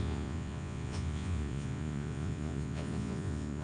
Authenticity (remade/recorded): remade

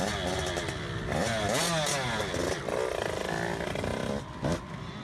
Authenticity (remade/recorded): recorded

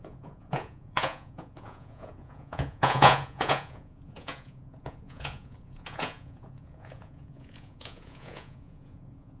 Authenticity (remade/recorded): remade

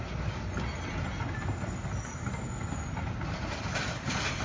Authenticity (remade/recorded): recorded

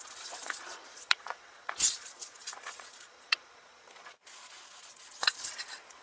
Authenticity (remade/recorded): remade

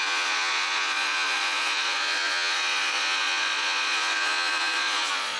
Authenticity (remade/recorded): remade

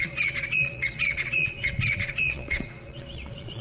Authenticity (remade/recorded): remade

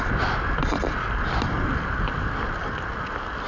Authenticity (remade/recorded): recorded